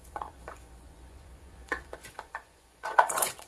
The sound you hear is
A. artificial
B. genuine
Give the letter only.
A